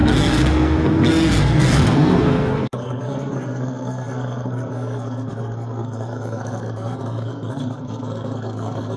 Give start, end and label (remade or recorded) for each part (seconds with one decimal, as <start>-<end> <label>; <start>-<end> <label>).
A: 0.0-9.0 remade